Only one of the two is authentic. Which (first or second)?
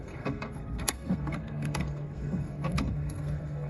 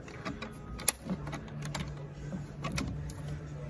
second